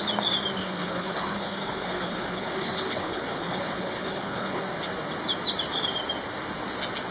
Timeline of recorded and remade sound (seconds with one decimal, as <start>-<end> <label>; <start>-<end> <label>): 0.0-0.6 recorded; 0.6-4.6 remade; 4.6-7.1 recorded